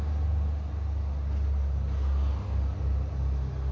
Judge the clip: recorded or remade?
recorded